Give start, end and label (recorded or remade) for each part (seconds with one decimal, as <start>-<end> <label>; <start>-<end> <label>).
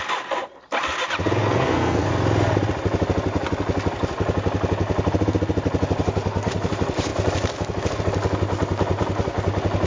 0.0-1.4 recorded; 1.4-2.1 remade; 2.1-9.9 recorded